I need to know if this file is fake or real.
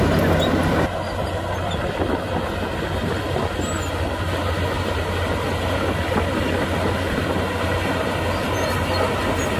real